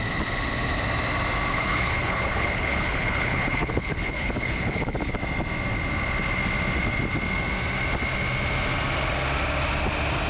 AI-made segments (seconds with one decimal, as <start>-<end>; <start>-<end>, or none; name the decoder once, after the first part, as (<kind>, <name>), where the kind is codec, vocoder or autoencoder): 1.5-5.1 (codec, HILCodec)